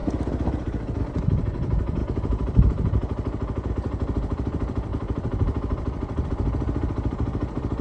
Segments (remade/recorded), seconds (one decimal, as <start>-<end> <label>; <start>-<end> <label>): 0.0-2.0 remade; 2.0-3.7 recorded; 3.7-7.8 remade